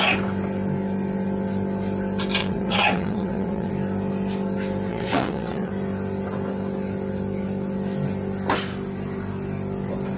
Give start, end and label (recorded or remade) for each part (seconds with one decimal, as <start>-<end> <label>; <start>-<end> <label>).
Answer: 0.0-2.4 recorded; 2.4-3.7 remade; 3.7-4.9 recorded; 4.9-5.7 remade; 5.7-10.2 recorded